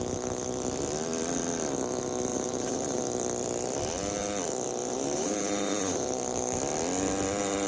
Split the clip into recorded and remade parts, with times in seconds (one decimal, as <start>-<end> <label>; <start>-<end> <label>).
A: 0.0-2.3 recorded; 2.3-3.0 remade; 3.0-4.8 recorded; 4.8-6.6 remade; 6.6-7.7 recorded